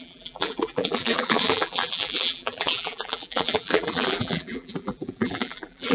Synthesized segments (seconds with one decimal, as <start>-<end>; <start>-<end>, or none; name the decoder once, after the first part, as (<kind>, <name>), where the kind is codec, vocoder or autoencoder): 0.0-5.9 (vocoder, BigVGAN v2)